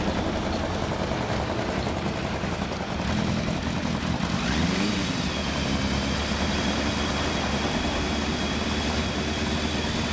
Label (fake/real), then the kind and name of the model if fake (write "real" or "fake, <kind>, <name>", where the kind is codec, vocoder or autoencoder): real